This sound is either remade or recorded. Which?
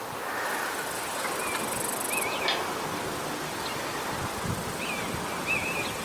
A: recorded